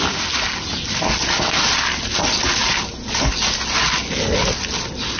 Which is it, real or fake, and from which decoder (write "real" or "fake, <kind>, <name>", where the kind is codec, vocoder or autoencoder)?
real